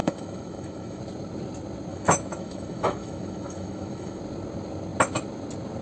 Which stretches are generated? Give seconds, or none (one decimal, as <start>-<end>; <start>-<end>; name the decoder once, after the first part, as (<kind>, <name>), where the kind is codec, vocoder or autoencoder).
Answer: 0.0-1.0 (autoencoder, DAC-VAE); 1.9-4.2